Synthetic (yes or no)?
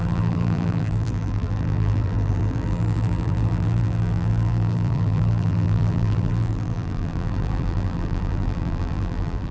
yes